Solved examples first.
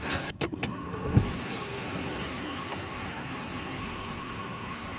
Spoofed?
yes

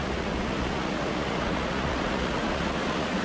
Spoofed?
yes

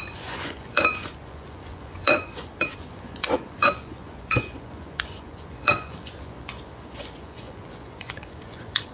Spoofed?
yes